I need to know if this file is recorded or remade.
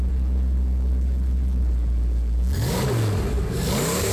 remade